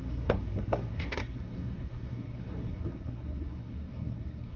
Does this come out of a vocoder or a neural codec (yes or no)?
yes